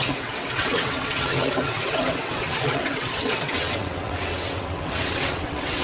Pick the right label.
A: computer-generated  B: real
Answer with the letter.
A